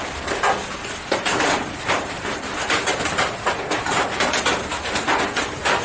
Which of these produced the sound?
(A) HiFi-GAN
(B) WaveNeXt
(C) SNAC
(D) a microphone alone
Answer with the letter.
D